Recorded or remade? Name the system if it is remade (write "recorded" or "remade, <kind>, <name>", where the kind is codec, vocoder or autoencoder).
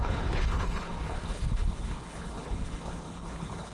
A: remade, codec, HILCodec